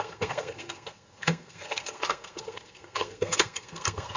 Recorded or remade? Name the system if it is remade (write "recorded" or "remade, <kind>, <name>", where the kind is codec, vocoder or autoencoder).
remade, codec, SNAC